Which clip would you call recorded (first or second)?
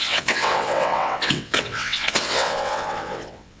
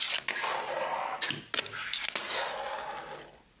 second